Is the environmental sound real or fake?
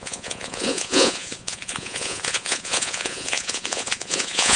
fake